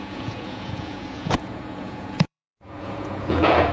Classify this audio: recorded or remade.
remade